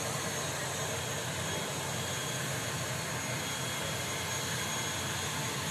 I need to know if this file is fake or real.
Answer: real